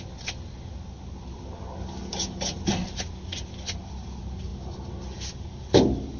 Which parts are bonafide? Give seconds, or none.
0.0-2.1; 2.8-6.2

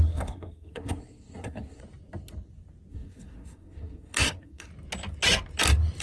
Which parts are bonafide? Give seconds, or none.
1.8-2.9; 4.7-6.0

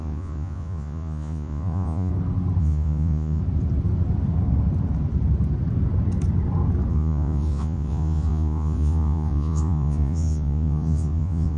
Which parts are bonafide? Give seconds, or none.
2.1-2.6; 3.4-6.9

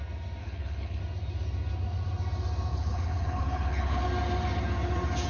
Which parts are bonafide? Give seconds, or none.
0.0-0.4; 1.0-2.7; 4.0-5.3

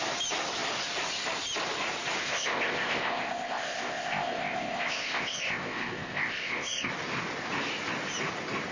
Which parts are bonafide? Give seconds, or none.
0.0-2.2; 6.9-8.7

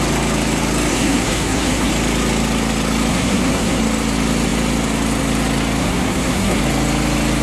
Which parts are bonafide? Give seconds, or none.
0.0-0.9; 1.9-3.1; 3.8-5.8; 6.6-7.4